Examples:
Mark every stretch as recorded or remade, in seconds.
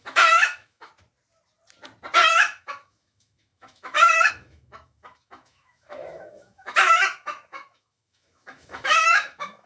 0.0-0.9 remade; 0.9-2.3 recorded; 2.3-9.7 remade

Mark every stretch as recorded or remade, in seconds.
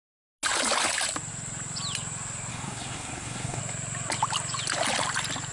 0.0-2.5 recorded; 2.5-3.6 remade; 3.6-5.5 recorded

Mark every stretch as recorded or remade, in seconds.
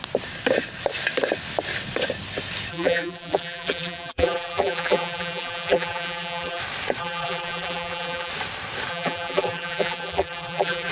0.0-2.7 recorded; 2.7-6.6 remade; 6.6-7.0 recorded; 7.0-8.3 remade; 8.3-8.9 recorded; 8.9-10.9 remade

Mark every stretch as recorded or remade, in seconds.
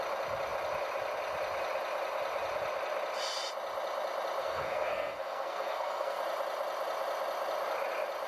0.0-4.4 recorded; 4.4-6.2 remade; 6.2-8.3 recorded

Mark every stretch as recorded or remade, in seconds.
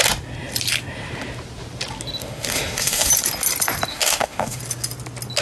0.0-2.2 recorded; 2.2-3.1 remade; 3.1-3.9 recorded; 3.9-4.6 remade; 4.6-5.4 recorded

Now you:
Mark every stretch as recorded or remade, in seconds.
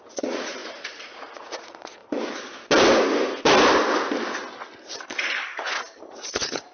0.0-2.0 remade; 2.0-6.0 recorded; 6.0-6.7 remade